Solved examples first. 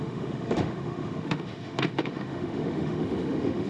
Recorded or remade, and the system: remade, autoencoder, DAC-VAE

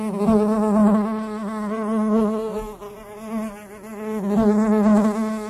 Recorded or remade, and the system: recorded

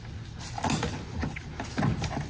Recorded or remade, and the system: recorded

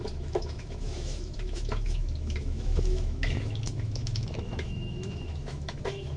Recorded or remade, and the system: remade, autoencoder, DAC-VAE